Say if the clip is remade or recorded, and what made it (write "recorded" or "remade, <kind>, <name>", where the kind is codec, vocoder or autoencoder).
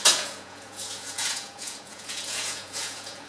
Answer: remade, vocoder, Vocos